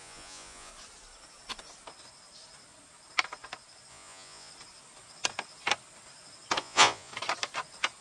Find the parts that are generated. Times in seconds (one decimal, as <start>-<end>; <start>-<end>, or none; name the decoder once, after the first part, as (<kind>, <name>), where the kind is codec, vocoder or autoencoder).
0.0-0.7 (vocoder, Vocos); 3.9-4.5; 6.6-7.1